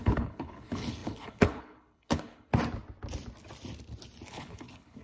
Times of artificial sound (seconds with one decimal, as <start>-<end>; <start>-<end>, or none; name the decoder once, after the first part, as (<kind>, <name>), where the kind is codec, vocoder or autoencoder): 0.0-2.5 (codec, HILCodec); 4.3-5.0